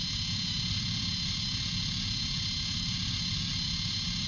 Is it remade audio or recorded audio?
recorded